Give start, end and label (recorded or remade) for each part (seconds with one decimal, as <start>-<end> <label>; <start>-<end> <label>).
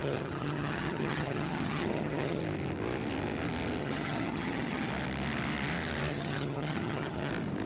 0.0-2.4 remade; 2.4-3.8 recorded; 3.8-4.9 remade; 4.9-6.1 recorded; 6.1-7.3 remade; 7.3-7.7 recorded